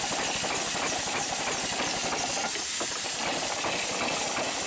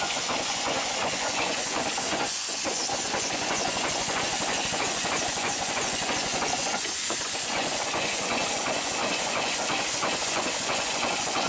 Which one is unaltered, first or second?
first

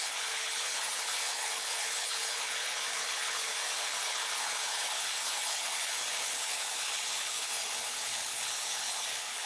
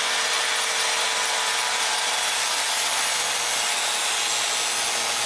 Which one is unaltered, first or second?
second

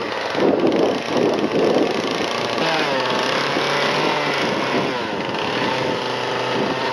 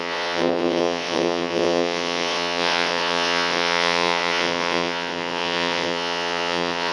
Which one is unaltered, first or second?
first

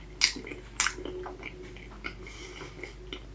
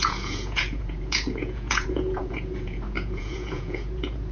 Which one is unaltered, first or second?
first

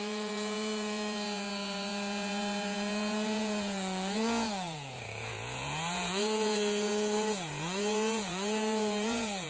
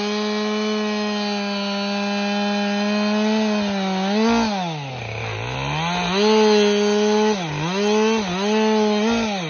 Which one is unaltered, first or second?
second